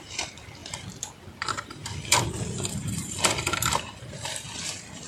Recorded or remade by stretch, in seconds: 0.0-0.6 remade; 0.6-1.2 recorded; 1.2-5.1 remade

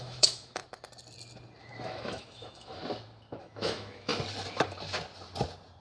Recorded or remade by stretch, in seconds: 0.0-0.6 remade; 0.6-1.6 recorded; 1.6-2.8 remade; 2.8-3.4 recorded; 3.4-4.1 remade; 4.1-5.8 recorded

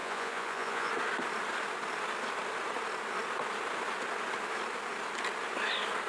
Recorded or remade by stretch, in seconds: 0.0-0.9 remade; 0.9-6.1 recorded

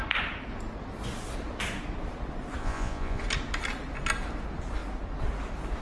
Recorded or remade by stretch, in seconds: 0.0-2.6 recorded; 2.6-3.2 remade; 3.2-5.8 recorded

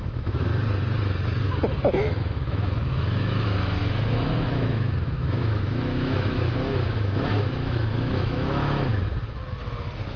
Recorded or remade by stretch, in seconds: 0.0-0.5 remade; 0.5-1.9 recorded; 1.9-8.9 remade; 8.9-10.2 recorded

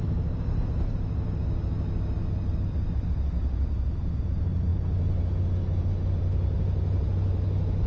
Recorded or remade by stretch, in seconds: 0.0-7.9 recorded

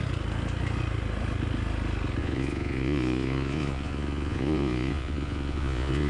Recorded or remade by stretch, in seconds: 0.0-2.2 recorded; 2.2-6.1 remade

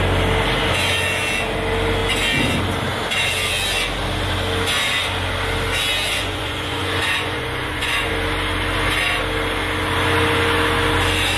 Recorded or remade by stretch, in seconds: 0.0-6.1 recorded; 6.1-8.1 remade; 8.1-11.4 recorded